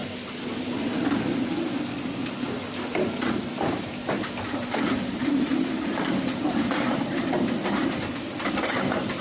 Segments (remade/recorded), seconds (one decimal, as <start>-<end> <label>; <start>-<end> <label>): 0.0-5.0 recorded; 5.0-9.2 remade